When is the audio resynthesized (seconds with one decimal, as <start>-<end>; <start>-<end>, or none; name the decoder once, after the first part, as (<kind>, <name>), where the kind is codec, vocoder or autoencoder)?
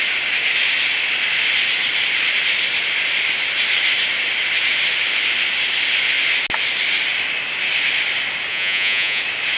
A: 8.5-9.2 (vocoder, Vocos)